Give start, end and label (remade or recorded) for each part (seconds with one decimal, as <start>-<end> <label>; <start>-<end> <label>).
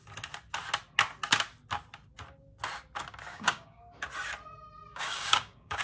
0.0-3.3 recorded; 3.3-3.8 remade; 3.8-4.9 recorded; 4.9-5.8 remade